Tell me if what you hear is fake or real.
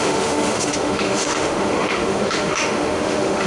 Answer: fake